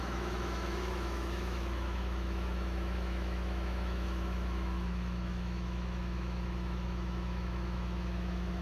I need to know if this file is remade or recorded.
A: remade